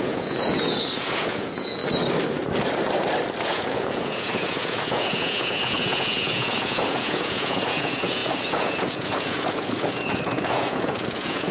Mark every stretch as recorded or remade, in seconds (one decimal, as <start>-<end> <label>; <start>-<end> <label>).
0.0-1.8 remade; 1.8-3.4 recorded; 3.4-11.5 remade